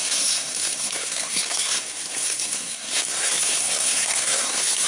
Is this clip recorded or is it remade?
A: remade